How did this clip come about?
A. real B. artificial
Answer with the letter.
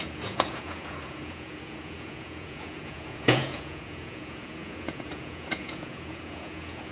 B